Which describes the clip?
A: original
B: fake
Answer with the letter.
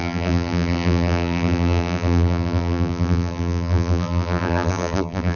B